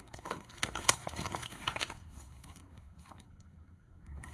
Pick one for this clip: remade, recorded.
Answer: remade